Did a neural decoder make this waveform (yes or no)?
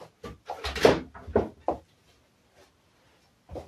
no